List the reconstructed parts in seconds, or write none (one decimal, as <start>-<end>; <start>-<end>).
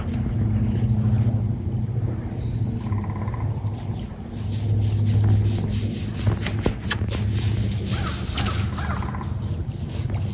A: none